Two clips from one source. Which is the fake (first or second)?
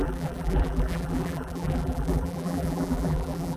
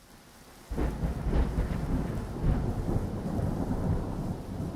first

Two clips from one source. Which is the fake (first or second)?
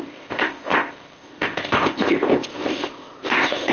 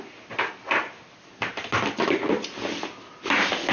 first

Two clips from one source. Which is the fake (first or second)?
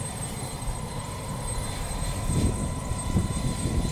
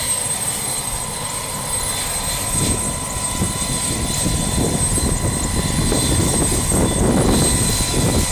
first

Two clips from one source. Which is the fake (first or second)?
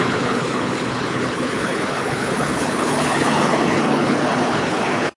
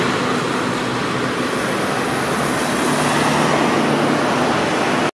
first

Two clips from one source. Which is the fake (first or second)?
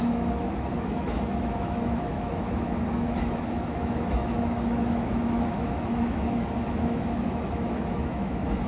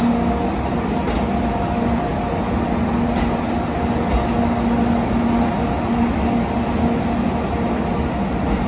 first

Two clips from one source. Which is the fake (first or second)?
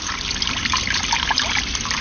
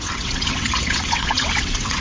second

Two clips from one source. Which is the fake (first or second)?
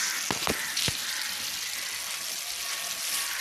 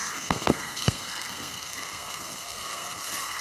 second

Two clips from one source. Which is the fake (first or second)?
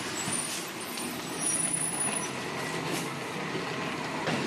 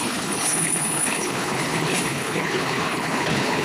second